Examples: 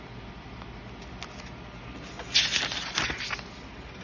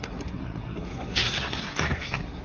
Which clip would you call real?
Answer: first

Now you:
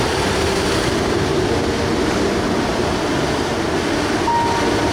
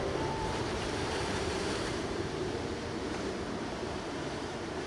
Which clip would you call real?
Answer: first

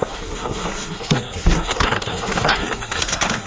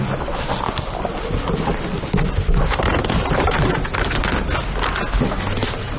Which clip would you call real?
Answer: second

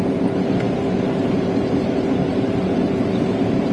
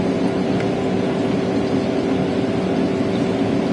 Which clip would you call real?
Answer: second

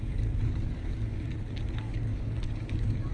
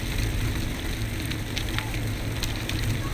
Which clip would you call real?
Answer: second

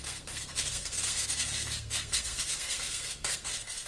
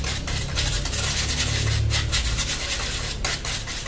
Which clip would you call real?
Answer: second